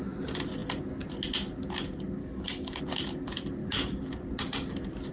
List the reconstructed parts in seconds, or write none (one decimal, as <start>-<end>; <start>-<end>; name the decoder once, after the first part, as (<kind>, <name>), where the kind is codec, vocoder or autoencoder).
2.2-2.8 (codec, DAC)